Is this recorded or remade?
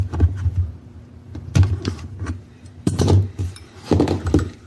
remade